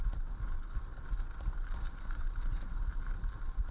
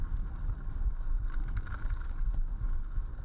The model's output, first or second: first